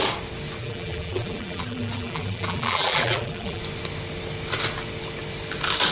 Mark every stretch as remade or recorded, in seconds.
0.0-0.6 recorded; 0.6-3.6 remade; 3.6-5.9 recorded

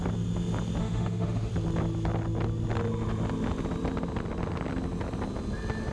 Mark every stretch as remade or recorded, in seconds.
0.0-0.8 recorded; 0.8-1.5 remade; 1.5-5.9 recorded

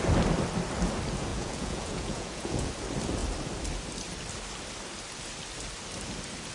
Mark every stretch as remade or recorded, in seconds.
0.0-1.3 recorded; 1.3-2.7 remade; 2.7-6.5 recorded